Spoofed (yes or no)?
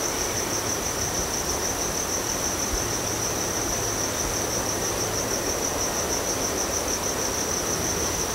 no